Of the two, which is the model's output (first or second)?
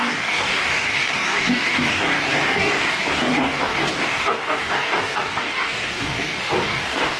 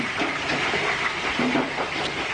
first